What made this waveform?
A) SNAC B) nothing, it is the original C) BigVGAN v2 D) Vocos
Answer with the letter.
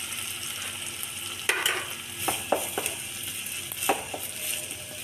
B